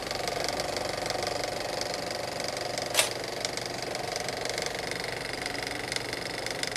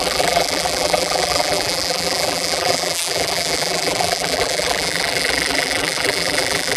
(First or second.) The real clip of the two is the first